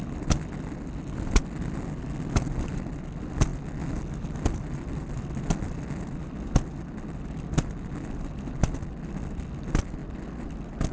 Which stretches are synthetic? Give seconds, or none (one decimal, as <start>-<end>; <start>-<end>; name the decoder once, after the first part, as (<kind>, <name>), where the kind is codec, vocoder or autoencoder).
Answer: none